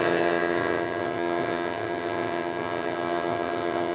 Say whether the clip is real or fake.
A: fake